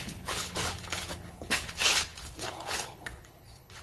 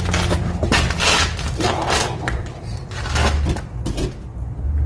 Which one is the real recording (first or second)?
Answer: second